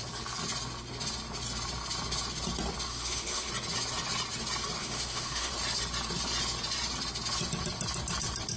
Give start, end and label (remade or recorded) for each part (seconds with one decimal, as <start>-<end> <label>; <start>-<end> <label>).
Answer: 0.0-2.9 recorded; 2.9-3.5 remade; 3.5-4.8 recorded; 4.8-5.5 remade; 5.5-8.6 recorded